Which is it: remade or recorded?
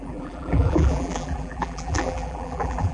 remade